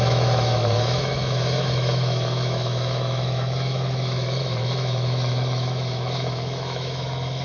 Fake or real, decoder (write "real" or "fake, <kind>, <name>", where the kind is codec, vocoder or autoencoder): fake, autoencoder, DAC-VAE